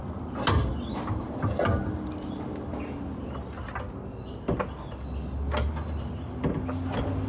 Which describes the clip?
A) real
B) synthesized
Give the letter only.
A